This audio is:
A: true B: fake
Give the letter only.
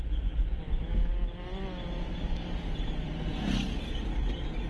A